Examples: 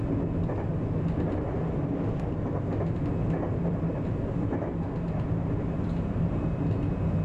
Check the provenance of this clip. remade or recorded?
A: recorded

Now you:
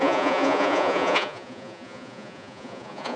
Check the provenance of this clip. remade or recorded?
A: remade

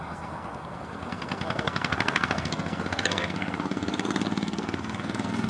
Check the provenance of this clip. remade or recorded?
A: remade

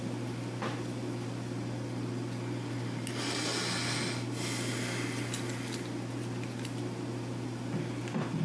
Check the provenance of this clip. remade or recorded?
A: recorded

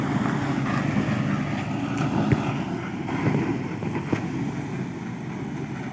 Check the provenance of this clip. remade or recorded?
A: recorded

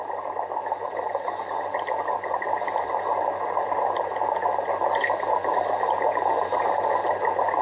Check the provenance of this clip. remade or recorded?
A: recorded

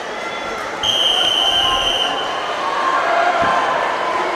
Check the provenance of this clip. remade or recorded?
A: remade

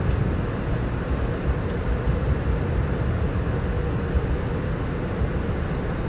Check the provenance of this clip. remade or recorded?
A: recorded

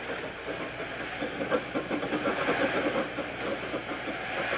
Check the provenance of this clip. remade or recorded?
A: recorded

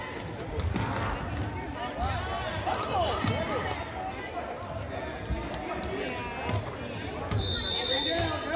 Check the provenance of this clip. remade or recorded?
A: recorded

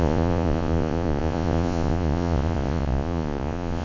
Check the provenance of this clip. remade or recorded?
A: remade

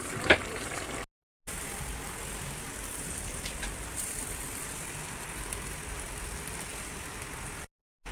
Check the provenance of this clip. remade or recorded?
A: recorded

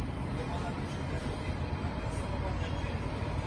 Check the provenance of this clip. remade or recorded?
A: remade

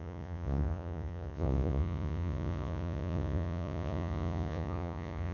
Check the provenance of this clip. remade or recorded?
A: remade